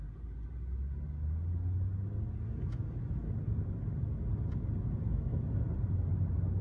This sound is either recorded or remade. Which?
recorded